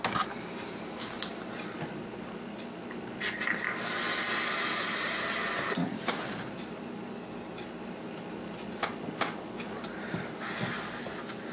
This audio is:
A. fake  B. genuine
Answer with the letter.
B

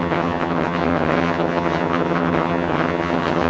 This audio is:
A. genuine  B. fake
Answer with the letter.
B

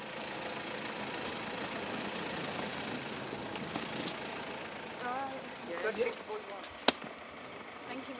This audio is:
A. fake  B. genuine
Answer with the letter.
B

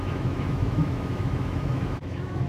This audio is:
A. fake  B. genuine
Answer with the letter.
A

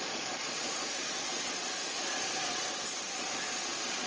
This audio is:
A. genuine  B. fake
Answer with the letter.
B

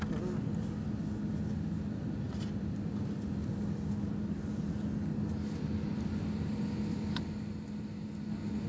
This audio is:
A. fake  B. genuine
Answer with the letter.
B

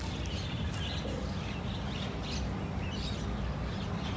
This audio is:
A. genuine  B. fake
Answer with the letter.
A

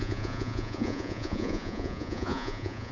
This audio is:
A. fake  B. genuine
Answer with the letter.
A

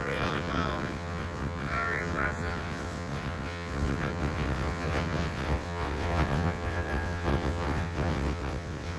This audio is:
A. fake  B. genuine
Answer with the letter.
A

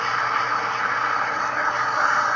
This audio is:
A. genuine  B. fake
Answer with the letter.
A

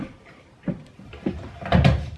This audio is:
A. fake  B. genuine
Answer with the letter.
B